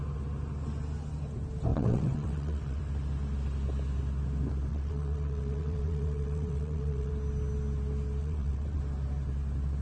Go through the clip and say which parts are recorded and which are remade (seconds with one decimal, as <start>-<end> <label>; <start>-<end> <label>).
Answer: 0.0-1.7 recorded; 1.7-2.8 remade; 2.8-4.7 recorded; 4.7-7.1 remade; 7.1-8.2 recorded; 8.2-8.8 remade; 8.8-9.8 recorded

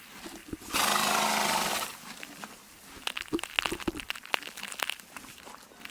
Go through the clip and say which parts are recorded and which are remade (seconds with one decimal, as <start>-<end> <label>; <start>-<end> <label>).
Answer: 0.0-5.9 recorded

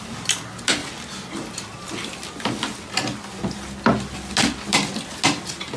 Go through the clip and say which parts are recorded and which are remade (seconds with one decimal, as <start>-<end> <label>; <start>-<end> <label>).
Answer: 0.0-5.8 recorded